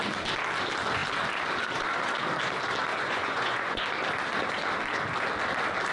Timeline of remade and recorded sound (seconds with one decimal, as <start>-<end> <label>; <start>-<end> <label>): 0.0-2.9 recorded; 2.9-3.8 remade; 3.8-5.9 recorded